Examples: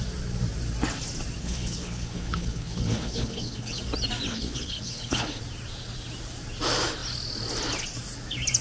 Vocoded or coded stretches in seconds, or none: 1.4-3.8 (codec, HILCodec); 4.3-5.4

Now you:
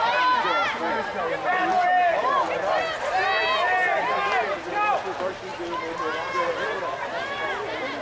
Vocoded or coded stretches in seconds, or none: none

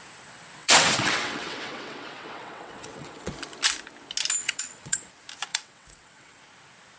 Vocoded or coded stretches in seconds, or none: 0.6-3.3 (vocoder, WaveNeXt); 4.4-5.1; 5.5-6.4

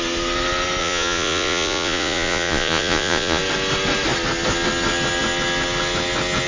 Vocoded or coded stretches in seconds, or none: 0.8-3.4 (vocoder, Vocos)

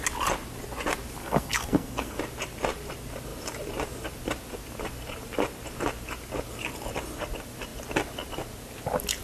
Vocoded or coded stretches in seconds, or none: 1.2-2.2 (codec, SNAC)

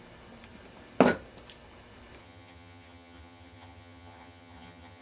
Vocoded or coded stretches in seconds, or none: 2.2-5.0 (vocoder, HiFi-GAN)

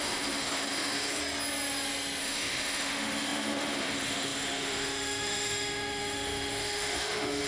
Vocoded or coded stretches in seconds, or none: 0.0-1.2 (autoencoder, DAC-VAE); 2.2-7.5